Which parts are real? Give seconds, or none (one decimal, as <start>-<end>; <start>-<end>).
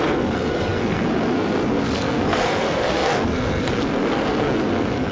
none